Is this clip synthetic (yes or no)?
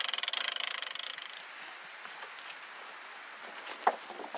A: no